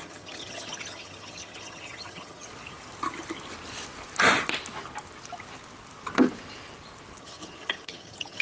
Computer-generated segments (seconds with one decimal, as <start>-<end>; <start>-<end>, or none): 0.0-2.5; 7.2-8.4